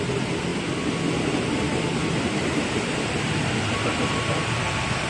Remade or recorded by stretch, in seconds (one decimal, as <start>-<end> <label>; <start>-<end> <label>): 0.0-5.1 recorded